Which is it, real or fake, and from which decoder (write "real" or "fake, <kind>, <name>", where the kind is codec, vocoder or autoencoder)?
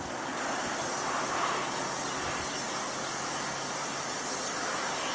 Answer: real